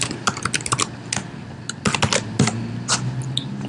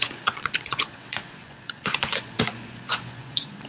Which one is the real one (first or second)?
first